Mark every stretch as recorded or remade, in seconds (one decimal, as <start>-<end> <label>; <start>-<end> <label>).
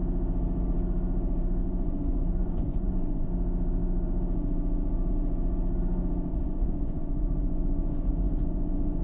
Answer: 0.0-1.6 recorded; 1.6-3.3 remade; 3.3-6.3 recorded; 6.3-9.0 remade